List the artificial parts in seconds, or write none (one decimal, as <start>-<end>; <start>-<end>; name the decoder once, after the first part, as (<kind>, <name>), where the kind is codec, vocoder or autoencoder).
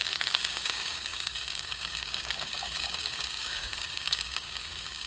0.0-5.1 (codec, DAC)